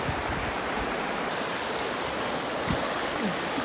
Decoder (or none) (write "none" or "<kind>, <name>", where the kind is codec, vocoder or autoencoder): none